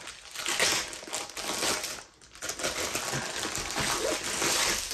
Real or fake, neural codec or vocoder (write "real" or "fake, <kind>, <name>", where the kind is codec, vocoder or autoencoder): real